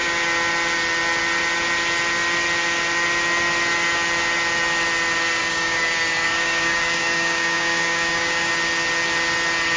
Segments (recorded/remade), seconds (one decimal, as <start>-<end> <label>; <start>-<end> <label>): 0.0-5.4 recorded; 5.4-8.5 remade; 8.5-9.8 recorded